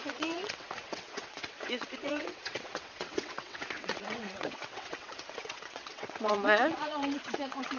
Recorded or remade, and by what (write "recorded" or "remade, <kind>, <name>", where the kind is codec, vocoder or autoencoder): remade, vocoder, WaveNeXt